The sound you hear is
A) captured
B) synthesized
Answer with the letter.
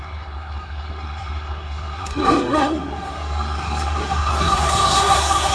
B